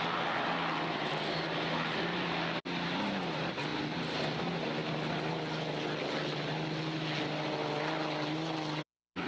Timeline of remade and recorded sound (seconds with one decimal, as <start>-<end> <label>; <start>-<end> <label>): 0.0-9.3 recorded